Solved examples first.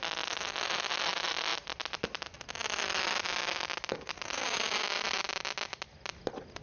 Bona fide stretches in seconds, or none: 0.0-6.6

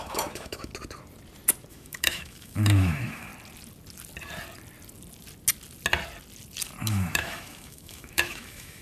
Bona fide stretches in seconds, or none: 0.7-1.7; 3.3-6.8

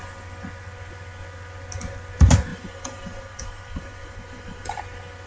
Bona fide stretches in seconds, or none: 0.0-2.5; 4.8-5.3

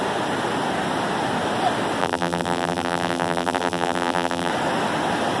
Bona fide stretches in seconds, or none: 0.0-2.0; 4.5-5.4

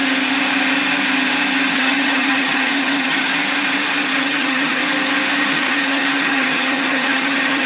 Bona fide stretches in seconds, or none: 0.0-1.7; 3.3-4.2; 4.8-5.5

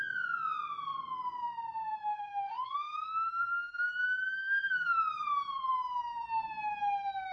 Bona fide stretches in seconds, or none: 0.0-2.0; 3.9-4.4; 5.0-7.3

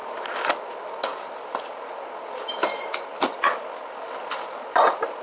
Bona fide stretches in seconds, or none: 0.0-2.6